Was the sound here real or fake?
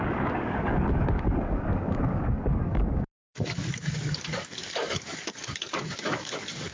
fake